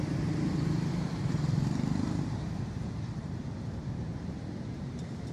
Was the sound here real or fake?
fake